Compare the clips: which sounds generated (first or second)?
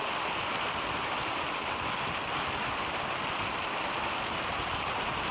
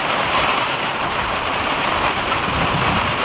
second